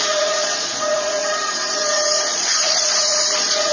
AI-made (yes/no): yes